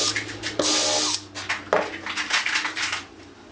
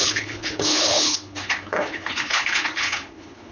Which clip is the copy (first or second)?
second